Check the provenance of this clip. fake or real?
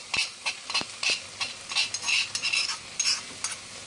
real